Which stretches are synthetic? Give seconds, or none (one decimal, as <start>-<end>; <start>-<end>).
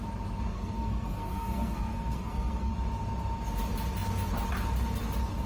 0.5-2.7